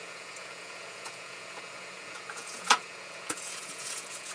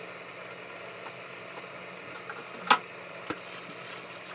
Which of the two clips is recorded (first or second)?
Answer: second